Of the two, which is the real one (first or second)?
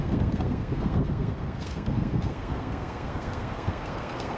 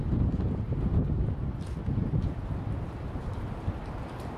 second